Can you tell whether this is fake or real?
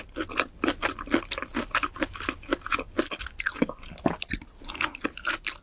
real